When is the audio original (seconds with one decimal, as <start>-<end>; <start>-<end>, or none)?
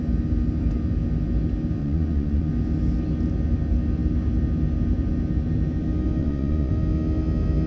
0.0-1.8; 2.5-6.2; 6.7-7.7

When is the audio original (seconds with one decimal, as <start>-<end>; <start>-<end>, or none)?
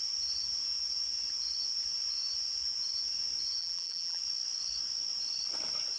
0.0-3.6; 4.2-6.0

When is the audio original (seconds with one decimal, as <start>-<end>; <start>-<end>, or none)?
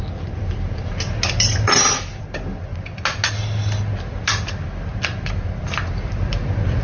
0.0-6.8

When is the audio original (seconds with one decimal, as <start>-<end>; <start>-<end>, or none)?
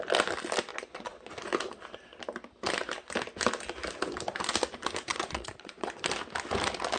0.0-0.7; 1.3-5.1; 6.0-7.0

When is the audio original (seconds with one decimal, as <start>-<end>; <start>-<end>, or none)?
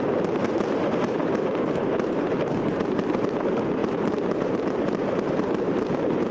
0.4-1.0